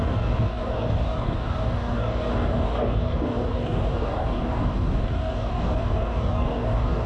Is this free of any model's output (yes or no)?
no